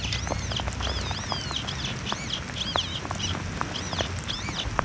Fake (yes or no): no